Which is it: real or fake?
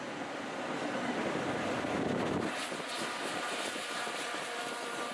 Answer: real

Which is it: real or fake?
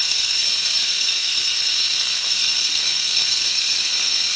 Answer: fake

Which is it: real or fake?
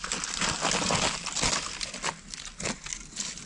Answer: real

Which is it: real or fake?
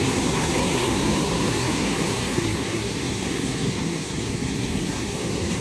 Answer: fake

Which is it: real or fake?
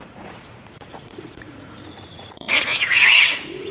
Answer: fake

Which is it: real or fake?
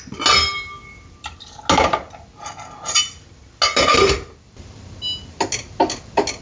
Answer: real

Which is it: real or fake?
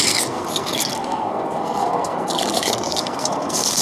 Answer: fake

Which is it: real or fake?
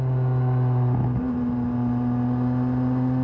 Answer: real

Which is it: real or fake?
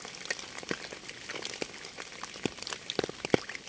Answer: real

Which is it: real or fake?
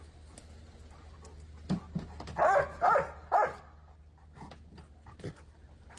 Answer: real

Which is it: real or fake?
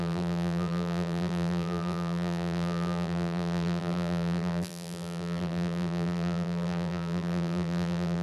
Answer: fake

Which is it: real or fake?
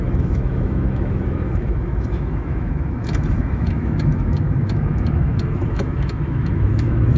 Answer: fake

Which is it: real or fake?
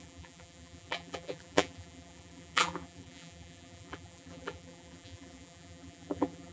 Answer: fake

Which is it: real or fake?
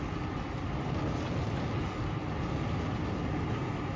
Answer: real